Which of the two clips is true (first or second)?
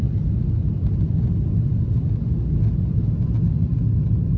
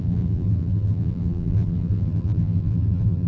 first